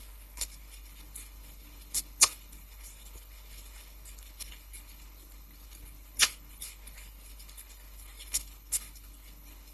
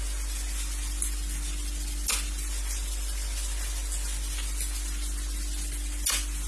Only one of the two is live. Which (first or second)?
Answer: second